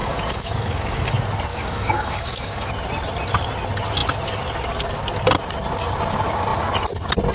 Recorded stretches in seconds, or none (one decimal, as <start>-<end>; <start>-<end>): 1.1-1.5; 2.7-7.3